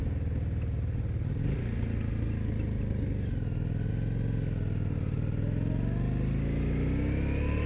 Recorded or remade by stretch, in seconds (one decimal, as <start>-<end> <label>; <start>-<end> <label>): 0.0-7.7 recorded

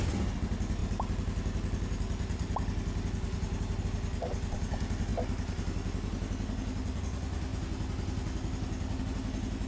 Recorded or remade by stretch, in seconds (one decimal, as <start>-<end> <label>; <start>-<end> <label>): 0.0-9.7 recorded

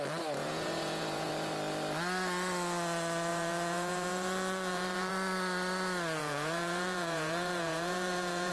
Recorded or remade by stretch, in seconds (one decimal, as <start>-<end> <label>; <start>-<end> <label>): 0.0-0.4 recorded; 0.4-1.3 remade; 1.3-3.3 recorded; 3.3-5.1 remade; 5.1-6.2 recorded; 6.2-8.5 remade